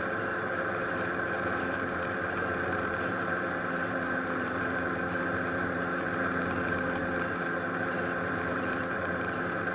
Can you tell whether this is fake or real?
fake